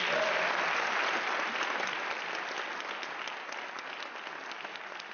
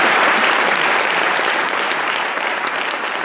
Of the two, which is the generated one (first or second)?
second